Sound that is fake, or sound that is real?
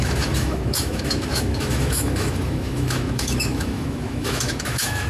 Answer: fake